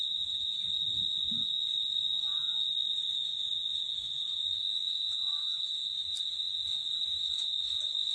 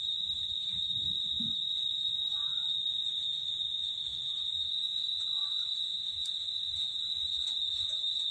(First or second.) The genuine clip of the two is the first